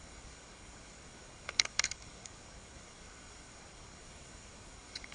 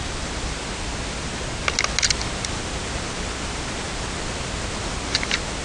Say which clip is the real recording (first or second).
second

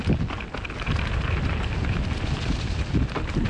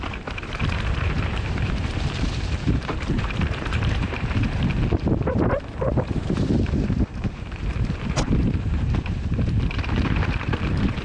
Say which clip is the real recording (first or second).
first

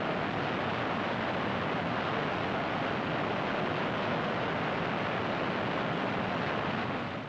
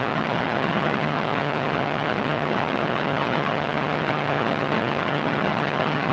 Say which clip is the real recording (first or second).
first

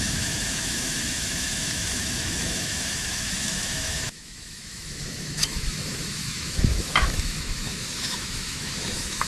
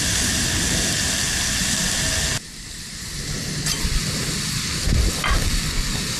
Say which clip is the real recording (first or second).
second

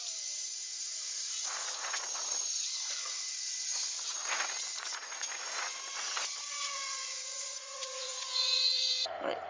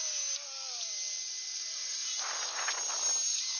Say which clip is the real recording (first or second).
second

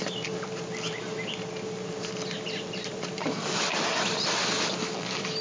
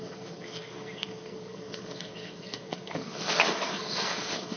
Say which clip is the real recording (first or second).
first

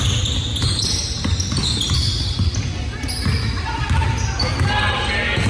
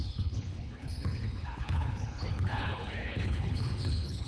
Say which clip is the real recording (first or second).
first